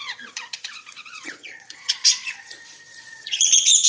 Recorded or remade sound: remade